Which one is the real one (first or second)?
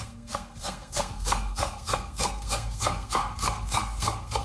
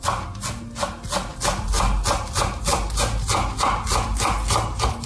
second